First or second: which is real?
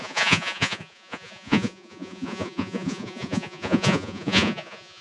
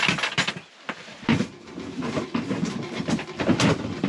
second